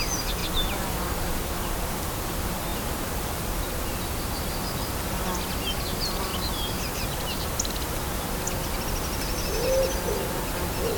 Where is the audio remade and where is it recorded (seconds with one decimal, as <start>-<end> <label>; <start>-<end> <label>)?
0.0-0.4 recorded; 0.4-2.0 remade; 2.0-2.7 recorded; 2.7-3.5 remade; 3.5-6.3 recorded; 6.3-7.4 remade; 7.4-11.0 recorded